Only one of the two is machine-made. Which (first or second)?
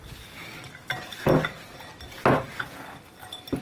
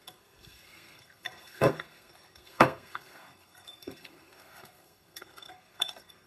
second